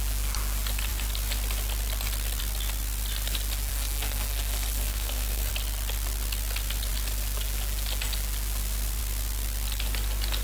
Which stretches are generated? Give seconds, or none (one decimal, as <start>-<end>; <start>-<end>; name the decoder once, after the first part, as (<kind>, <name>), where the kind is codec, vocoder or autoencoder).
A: 3.7-5.5 (codec, SNAC)